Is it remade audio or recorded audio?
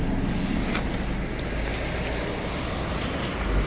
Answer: recorded